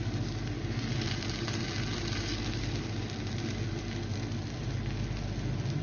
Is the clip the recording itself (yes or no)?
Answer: yes